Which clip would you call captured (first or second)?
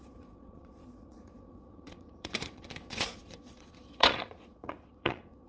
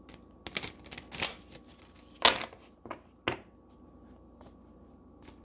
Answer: second